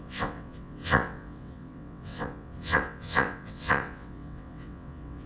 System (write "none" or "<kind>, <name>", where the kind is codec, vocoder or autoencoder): vocoder, WaveNeXt